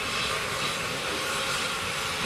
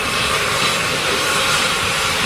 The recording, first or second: first